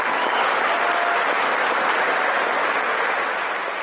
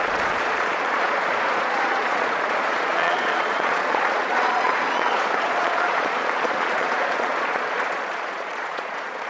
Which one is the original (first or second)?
first